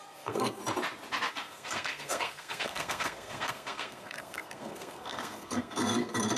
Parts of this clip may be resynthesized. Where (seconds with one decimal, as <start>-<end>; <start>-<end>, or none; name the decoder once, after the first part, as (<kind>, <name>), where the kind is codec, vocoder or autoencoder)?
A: 0.0-0.6 (codec, SNAC); 1.3-6.4